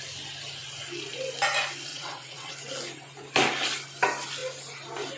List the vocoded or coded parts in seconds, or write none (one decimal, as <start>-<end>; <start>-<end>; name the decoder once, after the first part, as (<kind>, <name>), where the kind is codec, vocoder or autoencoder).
1.9-2.5 (vocoder, WaveNeXt)